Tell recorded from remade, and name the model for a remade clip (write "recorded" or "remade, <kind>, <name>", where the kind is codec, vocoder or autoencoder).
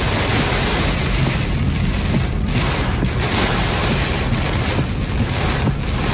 recorded